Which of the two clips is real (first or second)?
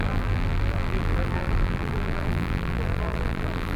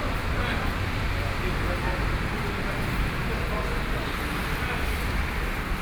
second